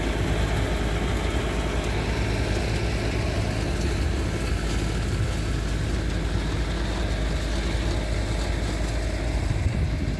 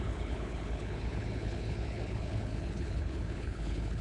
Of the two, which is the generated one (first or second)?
second